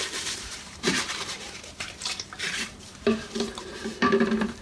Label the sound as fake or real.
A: fake